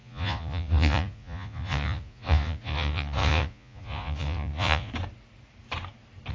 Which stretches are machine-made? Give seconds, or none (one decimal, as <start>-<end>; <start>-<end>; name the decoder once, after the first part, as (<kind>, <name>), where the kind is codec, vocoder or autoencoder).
0.0-4.9 (vocoder, Vocos)